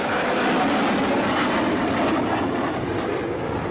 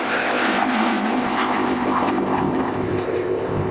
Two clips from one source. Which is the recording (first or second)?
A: first